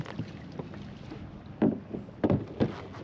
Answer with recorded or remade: recorded